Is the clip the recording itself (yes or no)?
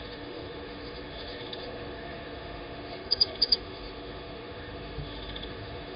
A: no